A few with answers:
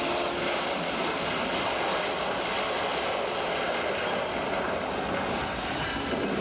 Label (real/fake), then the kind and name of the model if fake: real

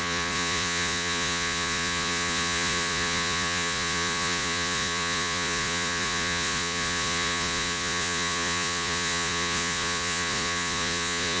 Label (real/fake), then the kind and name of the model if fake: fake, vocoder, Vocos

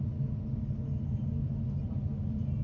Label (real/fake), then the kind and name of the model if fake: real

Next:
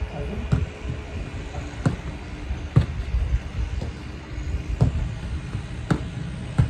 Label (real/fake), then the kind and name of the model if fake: real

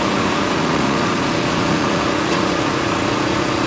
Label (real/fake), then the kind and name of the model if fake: fake, vocoder, Vocos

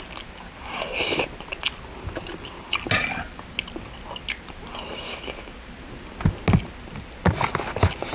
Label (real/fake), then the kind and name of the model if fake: real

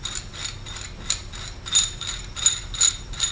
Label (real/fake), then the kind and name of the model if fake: real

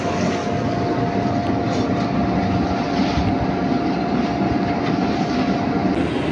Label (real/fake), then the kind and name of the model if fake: real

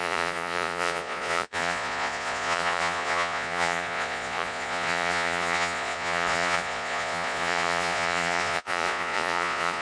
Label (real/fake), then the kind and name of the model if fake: fake, vocoder, Vocos